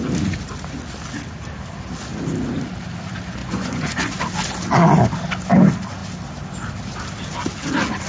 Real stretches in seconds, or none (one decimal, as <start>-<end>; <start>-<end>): 0.0-3.4; 4.2-8.1